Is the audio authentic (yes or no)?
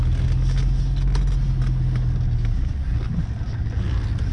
yes